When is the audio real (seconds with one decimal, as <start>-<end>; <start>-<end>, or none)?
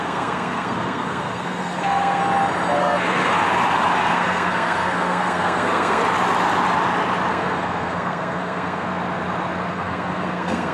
2.2-2.8; 3.3-4.1; 6.0-7.3; 8.9-9.7